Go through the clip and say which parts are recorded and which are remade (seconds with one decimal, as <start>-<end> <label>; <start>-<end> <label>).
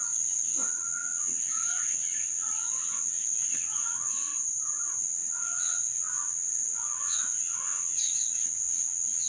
0.0-4.3 remade; 4.3-5.0 recorded; 5.0-9.3 remade